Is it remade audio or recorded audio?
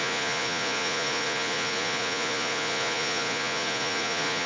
remade